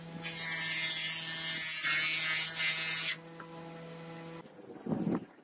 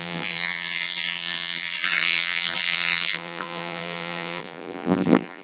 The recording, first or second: first